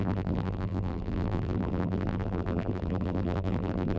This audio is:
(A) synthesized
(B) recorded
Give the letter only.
A